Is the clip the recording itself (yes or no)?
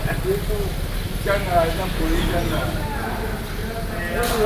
yes